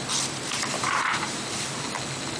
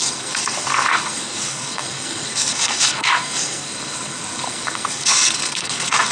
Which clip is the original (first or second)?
first